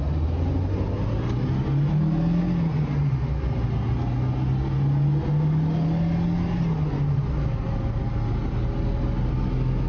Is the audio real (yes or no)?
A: yes